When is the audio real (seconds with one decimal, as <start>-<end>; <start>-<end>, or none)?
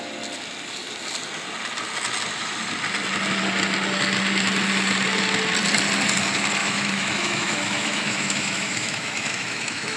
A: 0.0-6.6